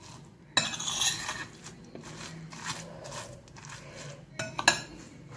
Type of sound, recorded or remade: recorded